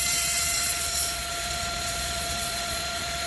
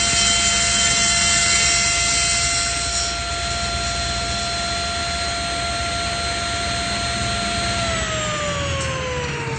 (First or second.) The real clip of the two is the second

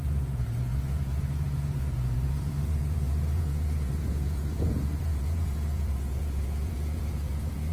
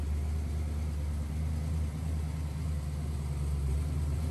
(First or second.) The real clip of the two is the second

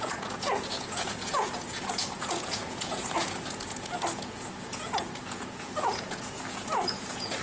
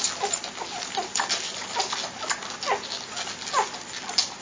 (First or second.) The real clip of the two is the second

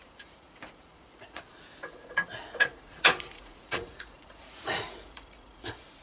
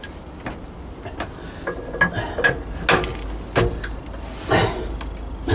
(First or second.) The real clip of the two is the second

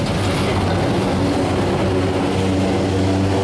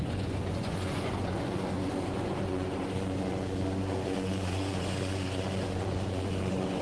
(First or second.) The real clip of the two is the first